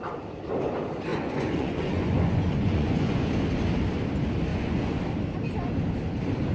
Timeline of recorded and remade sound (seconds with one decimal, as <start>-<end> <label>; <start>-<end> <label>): 0.0-1.1 recorded; 1.1-3.3 remade; 3.3-4.5 recorded; 4.5-5.0 remade; 5.0-6.5 recorded